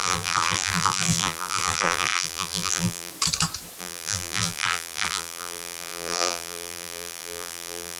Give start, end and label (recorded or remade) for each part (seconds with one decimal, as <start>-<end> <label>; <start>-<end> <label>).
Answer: 0.0-3.1 remade; 3.1-3.8 recorded; 3.8-8.0 remade